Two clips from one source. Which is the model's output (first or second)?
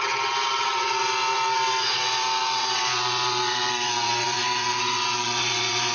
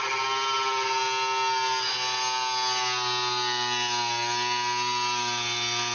first